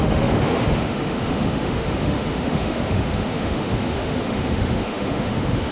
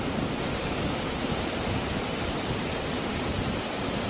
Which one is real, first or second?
second